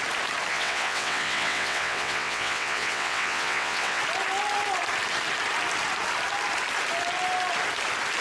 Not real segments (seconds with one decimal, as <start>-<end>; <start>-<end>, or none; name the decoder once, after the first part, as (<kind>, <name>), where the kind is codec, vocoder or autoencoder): 0.5-4.0 (vocoder, WaveNeXt)